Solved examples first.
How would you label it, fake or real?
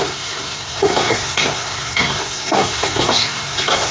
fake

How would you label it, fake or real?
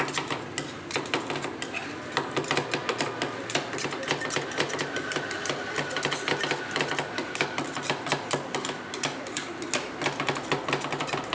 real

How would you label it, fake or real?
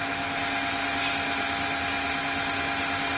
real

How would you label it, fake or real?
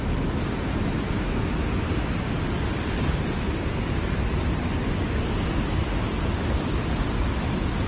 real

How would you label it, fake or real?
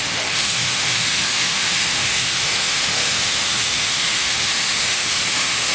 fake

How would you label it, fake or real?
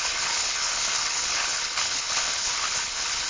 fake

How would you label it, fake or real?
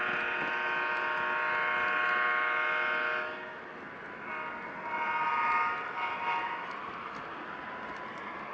real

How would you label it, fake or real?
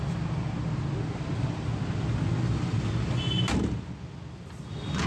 real